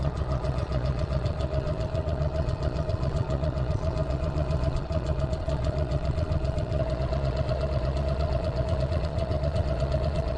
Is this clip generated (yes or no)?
yes